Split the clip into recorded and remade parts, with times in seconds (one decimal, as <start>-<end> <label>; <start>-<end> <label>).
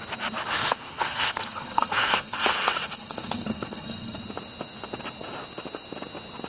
0.0-0.7 recorded; 0.7-4.2 remade; 4.2-6.5 recorded